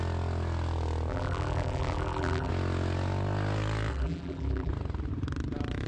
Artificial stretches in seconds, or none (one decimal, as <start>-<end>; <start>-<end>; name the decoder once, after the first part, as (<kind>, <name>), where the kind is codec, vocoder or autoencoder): 1.1-2.5 (vocoder, BigVGAN v2); 3.9-4.7